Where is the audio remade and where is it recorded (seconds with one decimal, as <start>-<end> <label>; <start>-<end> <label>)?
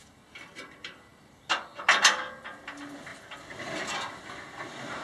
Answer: 0.0-5.0 recorded